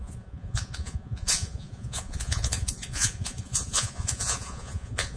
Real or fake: fake